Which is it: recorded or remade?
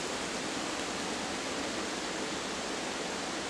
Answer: recorded